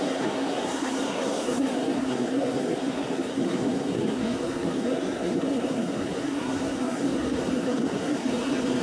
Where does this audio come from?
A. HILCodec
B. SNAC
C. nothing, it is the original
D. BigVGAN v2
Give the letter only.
B